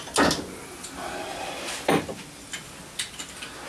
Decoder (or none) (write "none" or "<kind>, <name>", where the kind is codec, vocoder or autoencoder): none